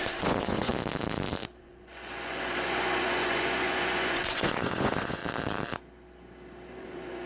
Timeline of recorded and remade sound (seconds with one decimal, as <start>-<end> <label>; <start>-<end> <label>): 0.0-0.7 remade; 0.7-1.6 recorded; 1.6-5.2 remade; 5.2-6.7 recorded; 6.7-7.3 remade